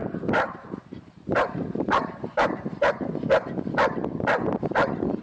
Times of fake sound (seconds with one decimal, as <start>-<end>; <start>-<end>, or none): 0.0-3.1